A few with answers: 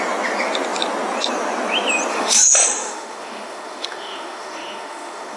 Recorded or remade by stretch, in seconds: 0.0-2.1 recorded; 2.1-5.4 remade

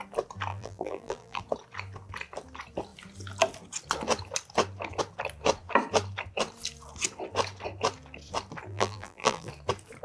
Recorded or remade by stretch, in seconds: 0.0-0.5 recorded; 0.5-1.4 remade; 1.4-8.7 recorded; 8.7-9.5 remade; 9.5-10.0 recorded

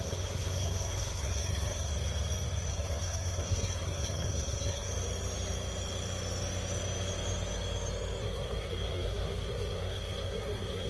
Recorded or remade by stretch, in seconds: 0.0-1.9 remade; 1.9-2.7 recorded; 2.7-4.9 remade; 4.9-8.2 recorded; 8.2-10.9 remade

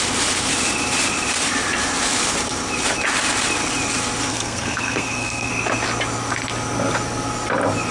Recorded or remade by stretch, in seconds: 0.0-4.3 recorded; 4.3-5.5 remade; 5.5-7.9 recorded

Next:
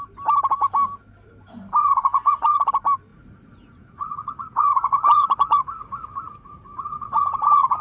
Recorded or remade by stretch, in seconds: 0.0-1.8 recorded; 1.8-2.7 remade; 2.7-3.1 recorded; 3.1-7.8 remade

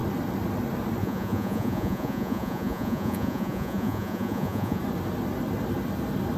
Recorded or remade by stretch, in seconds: 0.0-1.0 recorded; 1.0-4.8 remade; 4.8-6.4 recorded

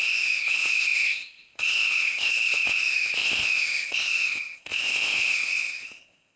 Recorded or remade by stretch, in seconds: 0.0-6.4 remade

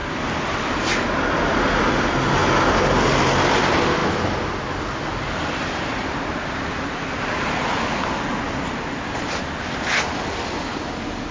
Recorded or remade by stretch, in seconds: 0.0-11.3 recorded